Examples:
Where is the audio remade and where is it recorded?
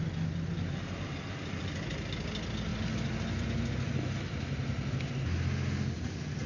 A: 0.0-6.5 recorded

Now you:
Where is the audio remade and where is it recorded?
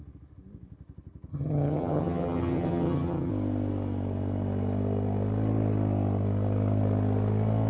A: 0.0-1.3 recorded; 1.3-3.3 remade; 3.3-7.7 recorded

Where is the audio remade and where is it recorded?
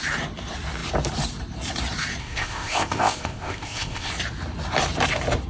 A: 0.0-2.2 recorded; 2.2-4.1 remade; 4.1-5.5 recorded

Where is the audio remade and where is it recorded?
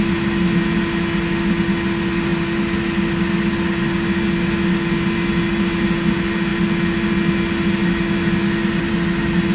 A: 0.0-9.5 recorded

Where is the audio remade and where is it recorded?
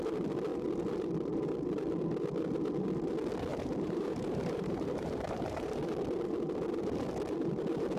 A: 0.0-3.5 recorded; 3.5-5.8 remade; 5.8-8.0 recorded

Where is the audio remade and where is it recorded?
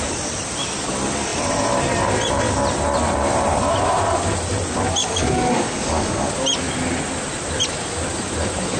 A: 0.0-5.0 recorded; 5.0-6.3 remade; 6.3-8.8 recorded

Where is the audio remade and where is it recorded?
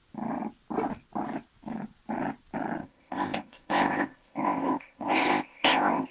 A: 0.0-2.8 recorded; 2.8-6.1 remade